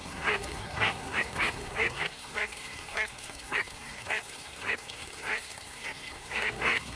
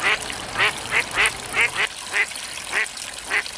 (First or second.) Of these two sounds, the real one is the second